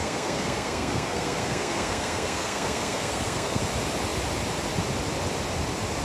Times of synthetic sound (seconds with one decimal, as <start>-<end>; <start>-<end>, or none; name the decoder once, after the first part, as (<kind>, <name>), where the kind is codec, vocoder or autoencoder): 0.0-3.6 (codec, SNAC)